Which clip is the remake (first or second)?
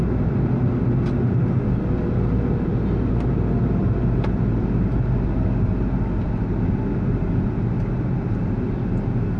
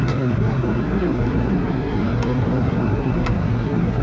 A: second